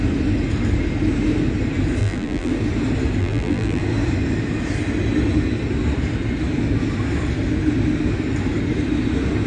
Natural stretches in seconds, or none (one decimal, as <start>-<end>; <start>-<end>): 0.0-2.0; 2.5-3.2; 3.8-9.5